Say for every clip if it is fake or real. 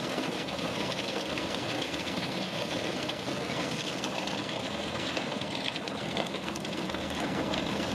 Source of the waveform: fake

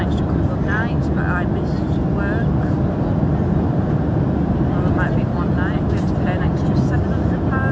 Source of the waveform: real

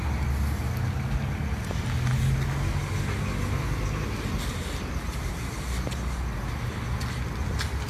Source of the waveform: real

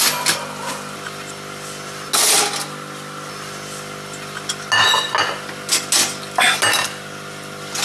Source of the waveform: real